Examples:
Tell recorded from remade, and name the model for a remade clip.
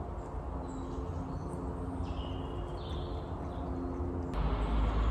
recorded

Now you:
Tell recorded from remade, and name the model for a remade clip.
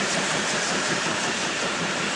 remade, vocoder, BigVGAN v2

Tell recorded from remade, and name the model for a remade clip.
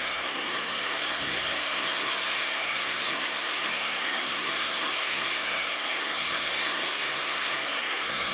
remade, codec, SNAC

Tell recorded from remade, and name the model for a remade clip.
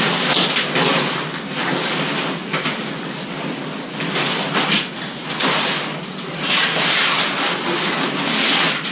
recorded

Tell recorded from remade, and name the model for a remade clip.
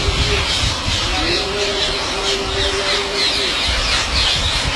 recorded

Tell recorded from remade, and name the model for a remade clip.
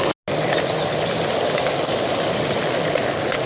recorded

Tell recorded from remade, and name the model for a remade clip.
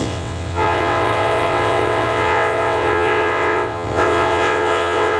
remade, vocoder, WaveNeXt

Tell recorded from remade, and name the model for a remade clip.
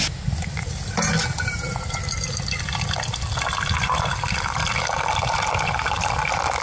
recorded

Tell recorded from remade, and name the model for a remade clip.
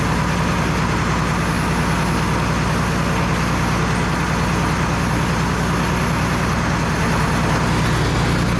recorded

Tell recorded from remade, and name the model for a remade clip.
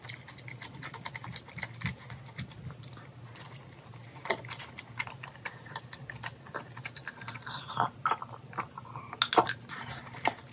recorded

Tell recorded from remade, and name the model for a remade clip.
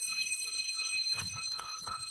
remade, codec, HILCodec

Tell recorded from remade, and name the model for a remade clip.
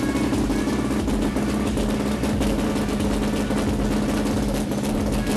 recorded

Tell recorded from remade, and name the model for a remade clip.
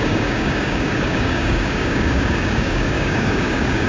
remade, codec, DAC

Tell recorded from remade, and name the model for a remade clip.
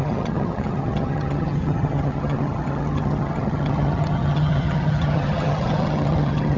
remade, vocoder, HiFi-GAN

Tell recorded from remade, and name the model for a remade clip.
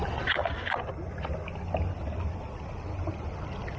recorded